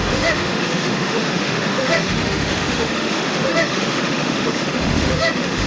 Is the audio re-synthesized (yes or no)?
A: yes